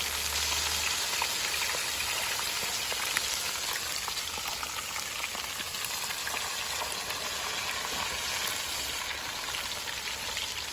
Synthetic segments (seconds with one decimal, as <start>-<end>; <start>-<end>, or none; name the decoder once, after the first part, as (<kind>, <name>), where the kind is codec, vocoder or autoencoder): none